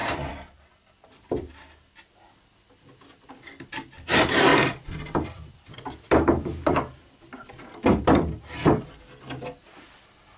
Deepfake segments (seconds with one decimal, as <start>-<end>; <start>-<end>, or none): 0.0-1.3; 4.5-7.5